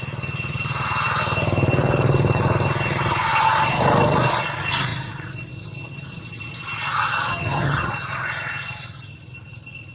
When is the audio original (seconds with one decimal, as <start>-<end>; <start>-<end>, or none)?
0.0-7.3; 7.9-9.9